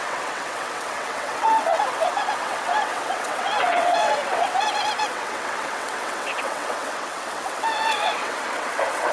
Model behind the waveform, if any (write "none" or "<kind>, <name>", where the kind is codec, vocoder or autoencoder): vocoder, WaveNeXt